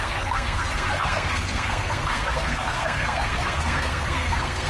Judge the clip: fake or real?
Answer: fake